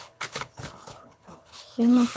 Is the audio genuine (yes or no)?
no